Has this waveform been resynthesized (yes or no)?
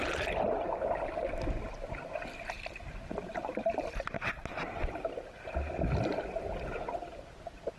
no